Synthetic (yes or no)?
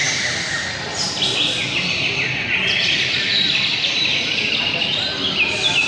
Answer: no